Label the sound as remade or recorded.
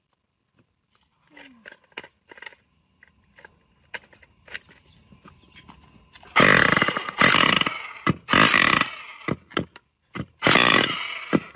recorded